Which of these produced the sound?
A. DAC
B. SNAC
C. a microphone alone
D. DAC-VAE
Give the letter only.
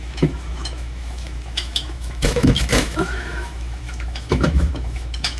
D